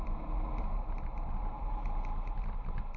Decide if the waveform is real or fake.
real